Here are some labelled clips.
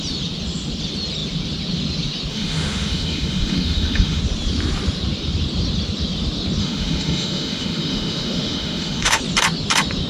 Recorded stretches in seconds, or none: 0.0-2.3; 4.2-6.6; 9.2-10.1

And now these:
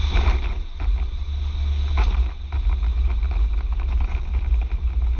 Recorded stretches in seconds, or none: 0.0-3.5

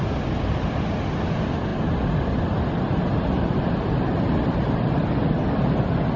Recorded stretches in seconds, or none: 0.0-6.2